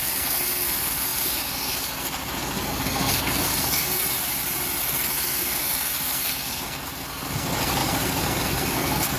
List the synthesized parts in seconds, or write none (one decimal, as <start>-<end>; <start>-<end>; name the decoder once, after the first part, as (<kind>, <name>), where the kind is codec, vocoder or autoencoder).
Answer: 0.0-4.0 (codec, SNAC); 4.8-9.2